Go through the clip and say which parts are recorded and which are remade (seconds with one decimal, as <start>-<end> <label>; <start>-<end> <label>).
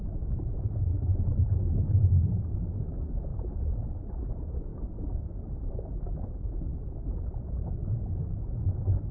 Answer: 0.0-3.3 remade; 3.3-4.3 recorded; 4.3-6.7 remade; 6.7-8.0 recorded; 8.0-9.1 remade